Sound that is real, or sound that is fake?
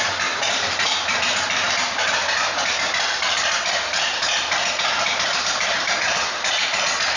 fake